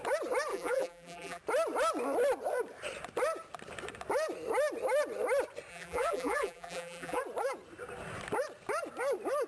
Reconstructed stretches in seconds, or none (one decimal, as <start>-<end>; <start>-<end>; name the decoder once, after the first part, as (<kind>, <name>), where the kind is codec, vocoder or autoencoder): 0.5-1.4 (vocoder, BigVGAN v2); 5.7-7.2